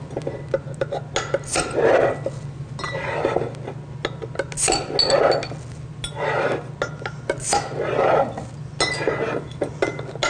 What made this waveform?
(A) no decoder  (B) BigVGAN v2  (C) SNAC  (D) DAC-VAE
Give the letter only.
A